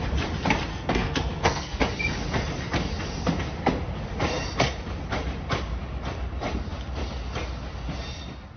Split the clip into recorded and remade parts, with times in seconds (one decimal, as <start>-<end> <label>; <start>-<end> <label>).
0.0-0.7 recorded; 0.7-1.8 remade; 1.8-8.6 recorded